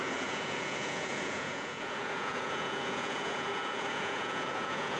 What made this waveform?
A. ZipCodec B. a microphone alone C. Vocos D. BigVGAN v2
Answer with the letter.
C